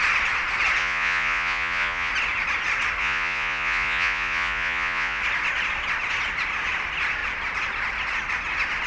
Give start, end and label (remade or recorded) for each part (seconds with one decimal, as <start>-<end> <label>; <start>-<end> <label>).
0.0-0.8 recorded; 0.8-2.1 remade; 2.1-3.0 recorded; 3.0-5.2 remade; 5.2-8.9 recorded